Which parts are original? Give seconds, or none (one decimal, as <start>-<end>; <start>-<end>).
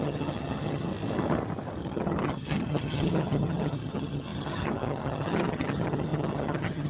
0.9-1.8